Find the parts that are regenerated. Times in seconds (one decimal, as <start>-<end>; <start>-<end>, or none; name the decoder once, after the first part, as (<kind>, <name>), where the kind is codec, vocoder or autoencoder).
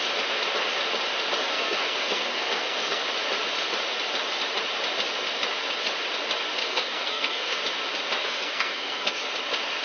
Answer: 1.4-3.0 (codec, SNAC); 6.6-7.6; 8.2-9.2